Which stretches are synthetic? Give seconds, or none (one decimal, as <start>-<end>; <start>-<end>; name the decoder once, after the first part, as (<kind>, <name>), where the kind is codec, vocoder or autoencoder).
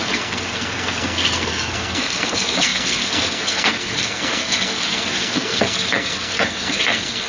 0.0-7.3 (codec, SNAC)